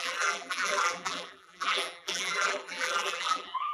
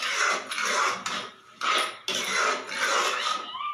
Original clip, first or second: second